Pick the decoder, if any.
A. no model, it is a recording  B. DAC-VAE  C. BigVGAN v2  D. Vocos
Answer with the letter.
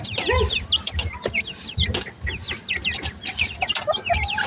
A